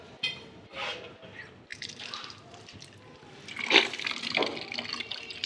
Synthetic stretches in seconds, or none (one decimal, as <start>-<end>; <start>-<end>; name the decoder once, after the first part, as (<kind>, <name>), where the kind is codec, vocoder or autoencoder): 0.0-4.5 (vocoder, BigVGAN v2)